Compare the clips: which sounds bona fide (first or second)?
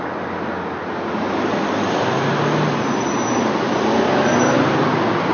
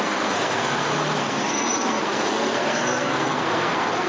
first